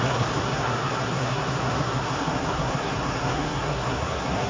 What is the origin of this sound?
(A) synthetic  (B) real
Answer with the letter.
A